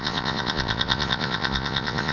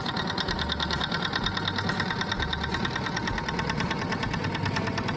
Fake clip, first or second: first